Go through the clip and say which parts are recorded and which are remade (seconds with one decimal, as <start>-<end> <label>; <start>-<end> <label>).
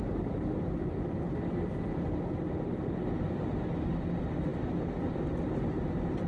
0.0-6.3 recorded